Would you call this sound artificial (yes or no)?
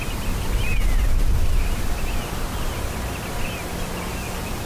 no